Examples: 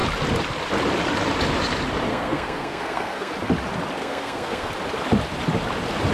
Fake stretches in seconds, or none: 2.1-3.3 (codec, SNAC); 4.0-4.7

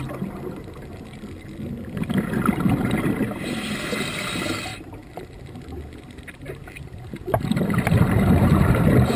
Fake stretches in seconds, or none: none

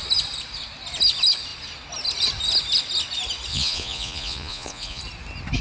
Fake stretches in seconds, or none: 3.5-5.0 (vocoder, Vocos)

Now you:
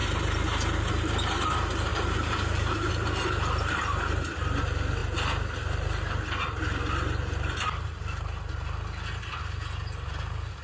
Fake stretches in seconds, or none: 0.0-0.9 (vocoder, BigVGAN v2); 1.9-2.9